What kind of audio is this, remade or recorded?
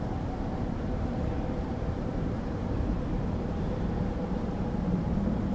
remade